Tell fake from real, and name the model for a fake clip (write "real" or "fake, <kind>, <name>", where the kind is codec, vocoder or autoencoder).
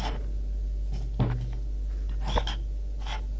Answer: real